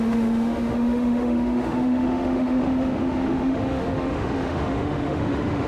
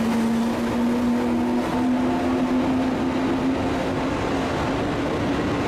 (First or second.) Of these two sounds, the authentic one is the second